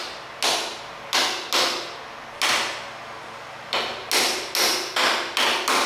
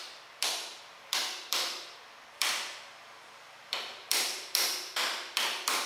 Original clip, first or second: first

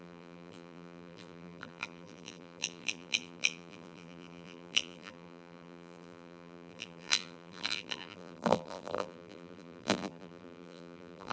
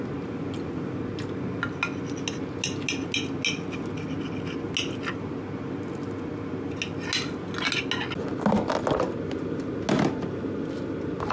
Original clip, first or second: second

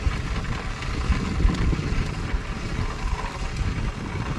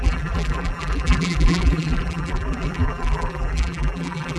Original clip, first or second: first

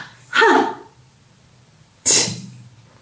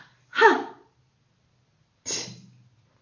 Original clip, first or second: second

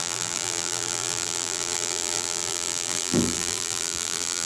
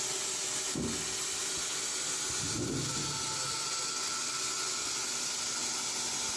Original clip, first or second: second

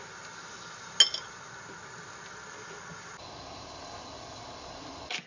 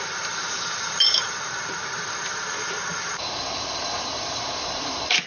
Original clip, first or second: first